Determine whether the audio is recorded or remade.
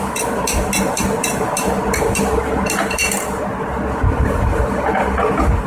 remade